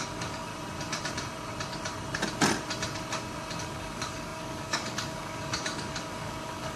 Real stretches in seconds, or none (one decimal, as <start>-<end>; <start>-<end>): 0.5-3.6